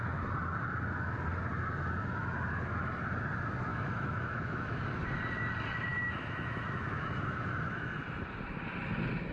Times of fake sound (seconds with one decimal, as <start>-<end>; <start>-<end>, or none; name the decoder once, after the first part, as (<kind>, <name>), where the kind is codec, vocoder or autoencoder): 3.7-4.8 (autoencoder, DAC-VAE); 5.9-8.0